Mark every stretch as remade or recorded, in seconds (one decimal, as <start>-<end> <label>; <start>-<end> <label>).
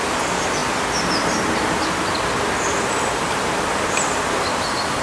0.0-5.0 recorded